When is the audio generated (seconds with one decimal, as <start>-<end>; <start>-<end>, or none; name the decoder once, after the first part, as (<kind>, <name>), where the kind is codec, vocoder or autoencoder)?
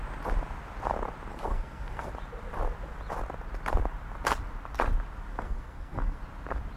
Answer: 1.3-2.1 (codec, SNAC); 5.3-6.2